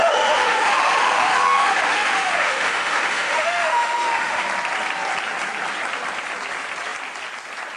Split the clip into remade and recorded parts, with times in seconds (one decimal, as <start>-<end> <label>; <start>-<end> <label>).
0.0-4.4 remade; 4.4-7.8 recorded